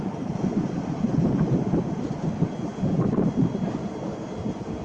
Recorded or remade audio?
recorded